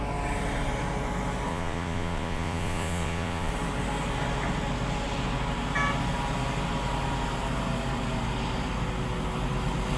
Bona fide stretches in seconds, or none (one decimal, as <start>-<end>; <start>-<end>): 0.0-1.5; 3.5-10.0